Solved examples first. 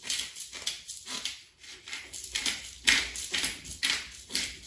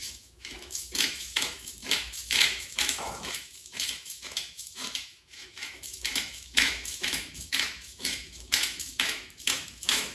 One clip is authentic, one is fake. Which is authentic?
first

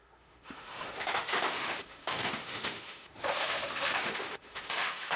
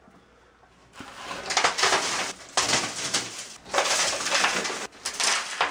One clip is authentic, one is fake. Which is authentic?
second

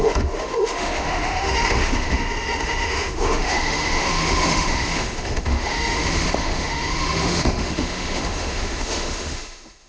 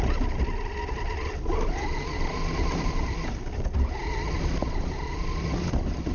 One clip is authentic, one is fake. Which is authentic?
second